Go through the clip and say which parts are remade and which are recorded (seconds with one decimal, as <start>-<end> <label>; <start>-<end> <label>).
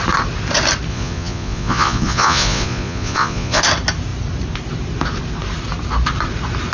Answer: 0.0-0.9 recorded; 0.9-3.6 remade; 3.6-6.7 recorded